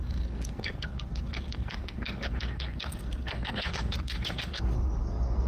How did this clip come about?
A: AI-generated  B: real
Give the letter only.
A